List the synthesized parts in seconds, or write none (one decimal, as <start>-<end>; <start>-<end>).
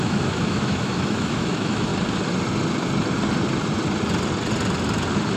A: 0.0-1.9